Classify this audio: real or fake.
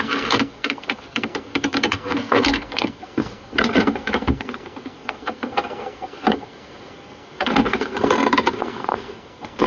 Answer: fake